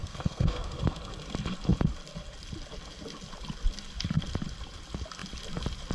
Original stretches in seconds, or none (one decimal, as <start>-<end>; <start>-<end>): 0.8-5.9

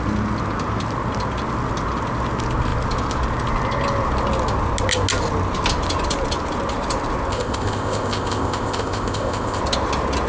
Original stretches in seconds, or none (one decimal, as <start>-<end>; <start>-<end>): 0.0-7.3; 9.6-10.3

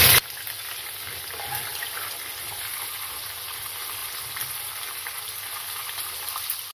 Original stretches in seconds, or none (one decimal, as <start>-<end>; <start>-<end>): 0.0-6.7

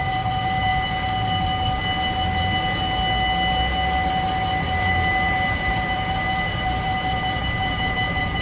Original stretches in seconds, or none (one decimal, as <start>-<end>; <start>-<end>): 0.7-4.8